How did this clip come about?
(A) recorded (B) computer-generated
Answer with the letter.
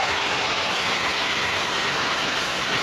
B